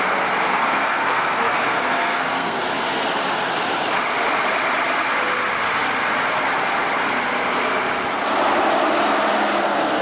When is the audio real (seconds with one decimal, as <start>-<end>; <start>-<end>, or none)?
0.0-0.5; 2.6-10.0